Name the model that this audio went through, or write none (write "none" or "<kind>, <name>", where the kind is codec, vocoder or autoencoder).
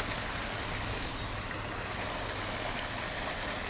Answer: none